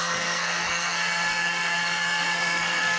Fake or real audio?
fake